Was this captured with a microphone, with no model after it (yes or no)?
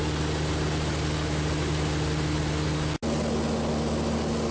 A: yes